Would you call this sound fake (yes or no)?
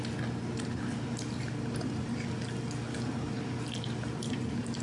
no